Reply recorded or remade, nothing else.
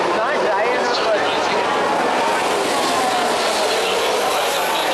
recorded